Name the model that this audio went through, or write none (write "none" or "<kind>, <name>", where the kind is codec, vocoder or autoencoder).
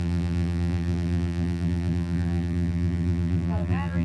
vocoder, BigVGAN v2